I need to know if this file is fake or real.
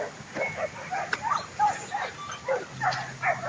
real